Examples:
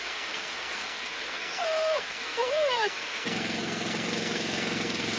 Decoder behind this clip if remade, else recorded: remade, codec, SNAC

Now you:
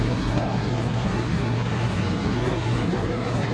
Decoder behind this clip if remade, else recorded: remade, codec, SNAC